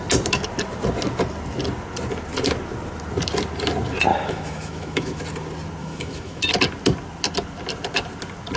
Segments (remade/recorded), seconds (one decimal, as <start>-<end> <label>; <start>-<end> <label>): 0.0-4.1 recorded; 4.1-5.2 remade; 5.2-5.8 recorded; 5.8-6.4 remade; 6.4-8.6 recorded